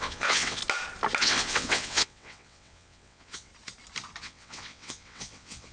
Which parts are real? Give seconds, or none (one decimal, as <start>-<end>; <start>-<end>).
0.6-1.2; 3.5-4.2